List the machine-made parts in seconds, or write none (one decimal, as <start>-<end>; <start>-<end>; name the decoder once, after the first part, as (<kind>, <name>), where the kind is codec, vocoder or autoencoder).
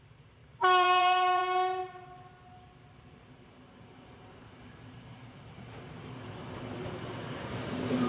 0.4-1.4 (vocoder, BigVGAN v2)